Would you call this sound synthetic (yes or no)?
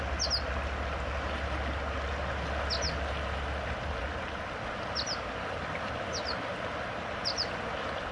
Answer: no